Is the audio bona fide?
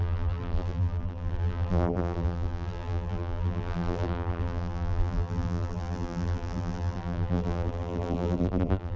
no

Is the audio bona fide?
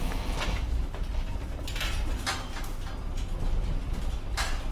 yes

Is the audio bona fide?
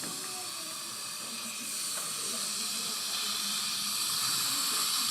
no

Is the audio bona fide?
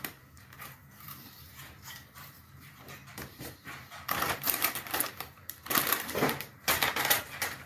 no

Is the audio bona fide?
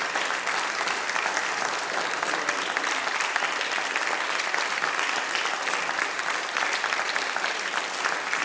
no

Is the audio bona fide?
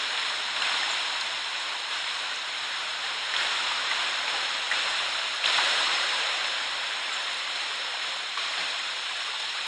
no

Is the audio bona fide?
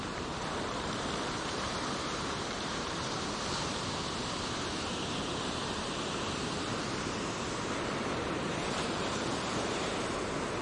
no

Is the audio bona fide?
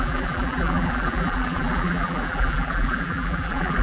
no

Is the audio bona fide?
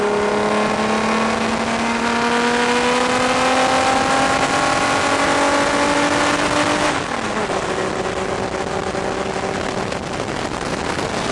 yes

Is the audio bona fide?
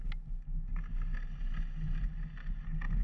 yes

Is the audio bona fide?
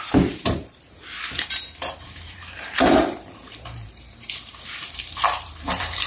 no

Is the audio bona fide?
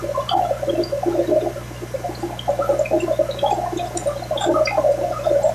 yes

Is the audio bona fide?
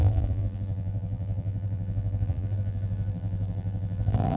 no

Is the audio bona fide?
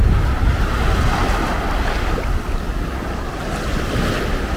yes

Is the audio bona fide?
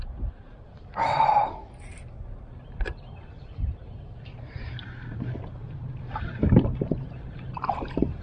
no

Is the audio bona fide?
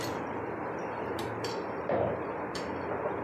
yes